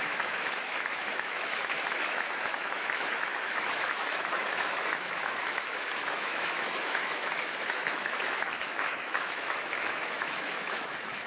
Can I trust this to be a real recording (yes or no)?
no